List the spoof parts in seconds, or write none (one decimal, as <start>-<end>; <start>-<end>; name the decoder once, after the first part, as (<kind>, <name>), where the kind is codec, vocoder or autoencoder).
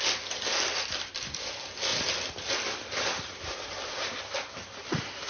none